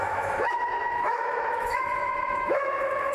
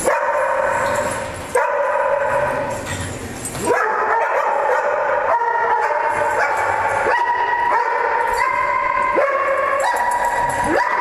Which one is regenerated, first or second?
first